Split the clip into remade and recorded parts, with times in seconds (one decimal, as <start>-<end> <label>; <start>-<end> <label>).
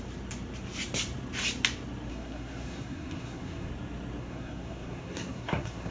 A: 0.0-2.1 recorded; 2.1-3.7 remade; 3.7-4.2 recorded; 4.2-5.9 remade